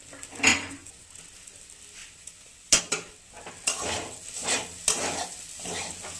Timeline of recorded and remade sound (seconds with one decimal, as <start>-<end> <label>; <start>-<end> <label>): 0.0-0.5 recorded; 0.5-1.1 remade; 1.1-2.0 recorded; 2.0-2.8 remade; 2.8-6.2 recorded